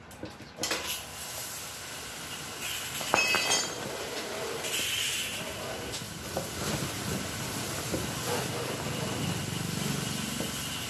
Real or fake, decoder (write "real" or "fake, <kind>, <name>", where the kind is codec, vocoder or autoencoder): real